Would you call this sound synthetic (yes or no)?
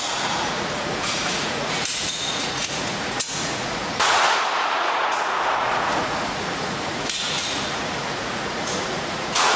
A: yes